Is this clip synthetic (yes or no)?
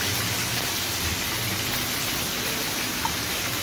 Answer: no